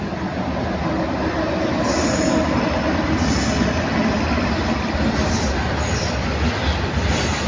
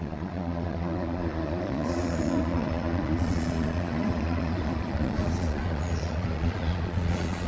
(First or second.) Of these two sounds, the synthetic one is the second